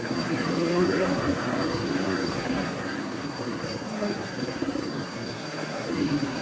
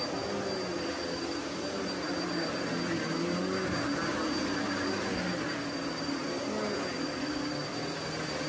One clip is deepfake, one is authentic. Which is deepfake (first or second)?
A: first